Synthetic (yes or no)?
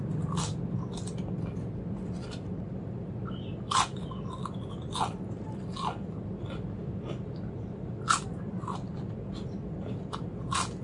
no